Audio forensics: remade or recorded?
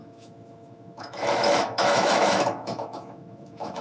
remade